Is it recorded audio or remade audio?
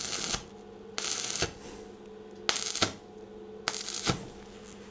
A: recorded